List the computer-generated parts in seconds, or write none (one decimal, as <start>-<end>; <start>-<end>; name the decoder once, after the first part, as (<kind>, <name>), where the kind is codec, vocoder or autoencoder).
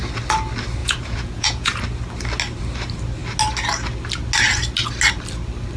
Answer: 0.8-1.8 (vocoder, Vocos)